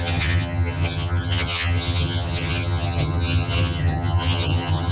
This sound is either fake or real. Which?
fake